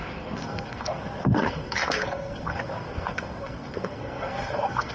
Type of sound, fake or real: fake